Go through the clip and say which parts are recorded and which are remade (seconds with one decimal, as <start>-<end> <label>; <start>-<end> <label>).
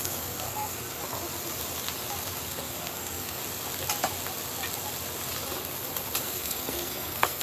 0.0-1.0 remade; 1.0-2.5 recorded; 2.5-3.4 remade; 3.4-6.2 recorded; 6.2-7.4 remade